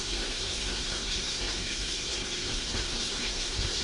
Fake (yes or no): yes